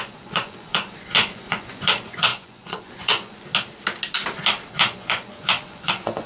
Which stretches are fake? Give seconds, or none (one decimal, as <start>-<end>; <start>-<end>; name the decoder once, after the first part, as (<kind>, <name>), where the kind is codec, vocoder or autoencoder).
0.0-3.5 (vocoder, Vocos); 4.7-6.3